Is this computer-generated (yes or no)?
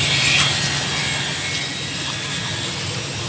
no